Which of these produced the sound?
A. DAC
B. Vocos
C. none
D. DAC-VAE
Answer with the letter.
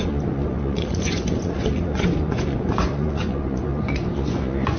B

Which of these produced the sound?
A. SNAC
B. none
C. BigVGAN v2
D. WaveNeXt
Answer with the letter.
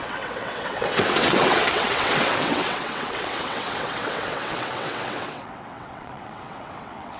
D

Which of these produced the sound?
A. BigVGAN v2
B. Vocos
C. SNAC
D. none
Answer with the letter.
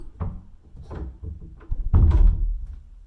A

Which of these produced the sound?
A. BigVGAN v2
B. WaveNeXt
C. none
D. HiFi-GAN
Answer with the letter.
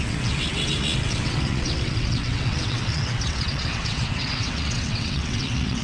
B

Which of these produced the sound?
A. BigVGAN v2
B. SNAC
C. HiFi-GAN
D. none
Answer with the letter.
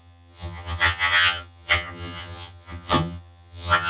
C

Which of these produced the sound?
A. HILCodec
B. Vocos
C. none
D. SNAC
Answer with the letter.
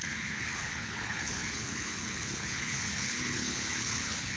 A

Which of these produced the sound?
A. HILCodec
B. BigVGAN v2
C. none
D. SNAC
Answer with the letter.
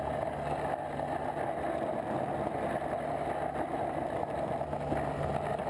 C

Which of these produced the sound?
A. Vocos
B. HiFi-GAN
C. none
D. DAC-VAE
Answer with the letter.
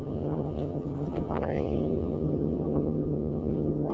B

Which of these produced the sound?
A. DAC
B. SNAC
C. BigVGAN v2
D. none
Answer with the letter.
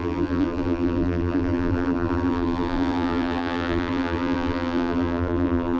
C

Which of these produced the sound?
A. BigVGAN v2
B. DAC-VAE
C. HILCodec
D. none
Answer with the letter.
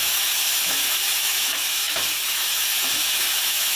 B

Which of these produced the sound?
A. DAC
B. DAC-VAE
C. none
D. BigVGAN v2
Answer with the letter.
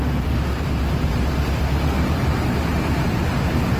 D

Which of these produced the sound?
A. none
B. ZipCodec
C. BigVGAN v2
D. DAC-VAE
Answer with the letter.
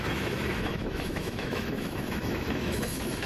D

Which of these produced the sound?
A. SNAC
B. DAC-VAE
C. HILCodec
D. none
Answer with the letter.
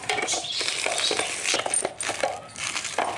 D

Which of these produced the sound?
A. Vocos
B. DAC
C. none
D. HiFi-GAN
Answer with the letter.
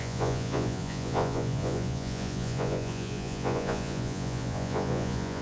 A